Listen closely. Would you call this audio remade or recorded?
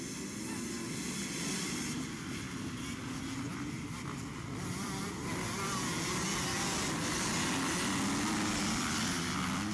recorded